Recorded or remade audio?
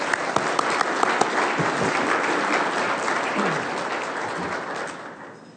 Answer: recorded